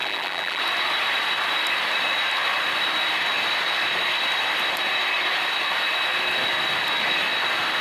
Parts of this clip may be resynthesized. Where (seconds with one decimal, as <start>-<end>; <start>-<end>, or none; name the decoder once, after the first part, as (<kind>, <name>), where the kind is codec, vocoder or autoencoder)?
0.0-0.6 (vocoder, BigVGAN v2)